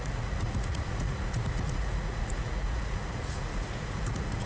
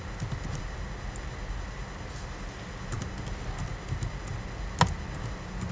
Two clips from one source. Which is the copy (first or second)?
first